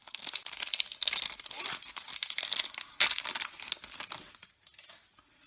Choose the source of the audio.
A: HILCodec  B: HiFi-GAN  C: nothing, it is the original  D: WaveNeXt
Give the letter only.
C